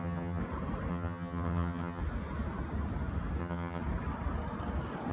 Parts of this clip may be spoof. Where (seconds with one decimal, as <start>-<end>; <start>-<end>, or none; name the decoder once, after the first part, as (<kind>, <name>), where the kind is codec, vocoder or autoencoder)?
0.0-0.4 (vocoder, HiFi-GAN); 0.9-2.0; 3.4-3.8